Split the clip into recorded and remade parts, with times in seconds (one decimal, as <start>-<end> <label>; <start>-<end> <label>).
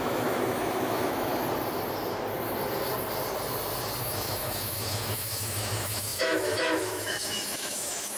0.0-1.3 remade; 1.3-4.0 recorded; 4.0-8.2 remade